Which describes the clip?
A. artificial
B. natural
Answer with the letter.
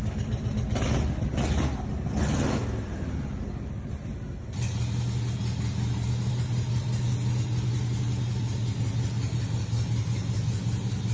B